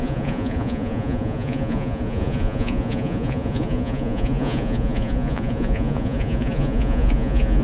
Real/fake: fake